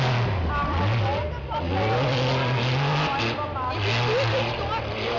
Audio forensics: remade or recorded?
recorded